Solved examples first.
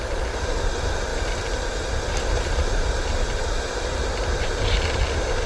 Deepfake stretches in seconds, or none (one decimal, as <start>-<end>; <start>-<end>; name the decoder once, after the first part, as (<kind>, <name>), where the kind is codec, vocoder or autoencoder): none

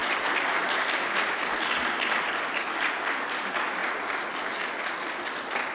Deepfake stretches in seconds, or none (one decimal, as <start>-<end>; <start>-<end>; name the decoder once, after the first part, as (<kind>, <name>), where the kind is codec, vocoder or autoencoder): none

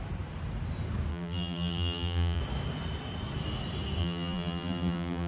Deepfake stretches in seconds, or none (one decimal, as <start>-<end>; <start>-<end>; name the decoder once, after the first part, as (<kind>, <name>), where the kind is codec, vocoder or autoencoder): 1.1-2.4 (vocoder, BigVGAN v2); 4.0-5.3

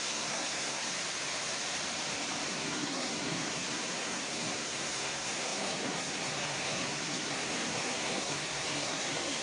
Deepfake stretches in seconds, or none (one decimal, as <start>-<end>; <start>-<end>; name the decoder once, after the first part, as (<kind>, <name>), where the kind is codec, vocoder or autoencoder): 0.0-0.9 (codec, SNAC); 2.5-9.4

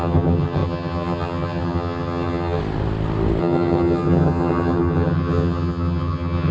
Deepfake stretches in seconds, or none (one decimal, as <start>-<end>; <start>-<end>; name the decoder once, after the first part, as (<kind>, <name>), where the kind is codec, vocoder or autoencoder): 0.0-2.6 (vocoder, HiFi-GAN); 3.4-6.5